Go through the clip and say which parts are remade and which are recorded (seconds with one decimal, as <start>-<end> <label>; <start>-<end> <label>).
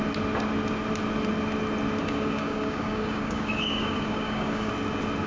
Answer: 0.0-2.0 recorded; 2.0-4.7 remade; 4.7-5.3 recorded